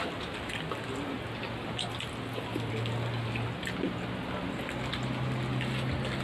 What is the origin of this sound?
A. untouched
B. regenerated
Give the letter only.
A